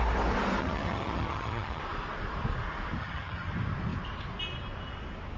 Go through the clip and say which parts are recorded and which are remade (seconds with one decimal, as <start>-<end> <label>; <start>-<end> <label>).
0.0-0.6 recorded; 0.6-1.8 remade; 1.8-3.0 recorded; 3.0-3.5 remade; 3.5-5.4 recorded